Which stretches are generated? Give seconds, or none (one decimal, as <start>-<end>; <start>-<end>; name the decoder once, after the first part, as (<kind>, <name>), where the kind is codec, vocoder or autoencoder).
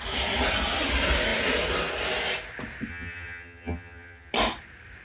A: 2.9-4.3 (vocoder, HiFi-GAN)